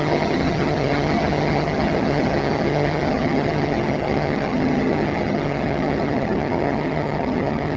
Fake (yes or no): yes